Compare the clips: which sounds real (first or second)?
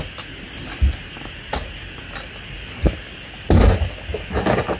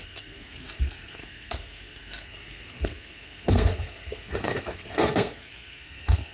first